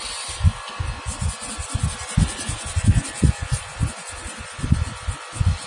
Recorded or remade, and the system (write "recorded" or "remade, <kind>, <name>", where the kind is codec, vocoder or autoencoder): recorded